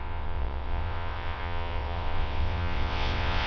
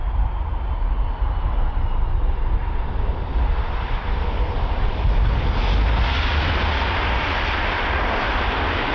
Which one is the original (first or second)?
second